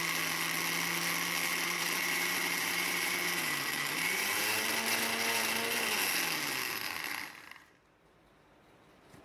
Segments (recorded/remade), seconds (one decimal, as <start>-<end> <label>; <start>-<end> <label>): 0.0-1.5 recorded; 1.5-4.6 remade; 4.6-9.2 recorded